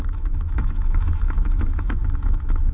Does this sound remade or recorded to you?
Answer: remade